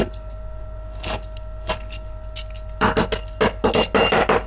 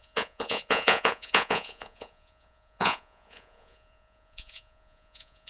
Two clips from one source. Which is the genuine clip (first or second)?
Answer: first